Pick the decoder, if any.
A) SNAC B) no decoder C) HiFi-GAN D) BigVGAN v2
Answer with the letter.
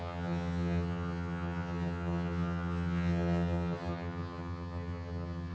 C